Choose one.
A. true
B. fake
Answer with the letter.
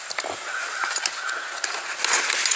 A